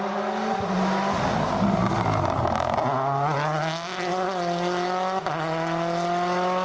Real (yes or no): yes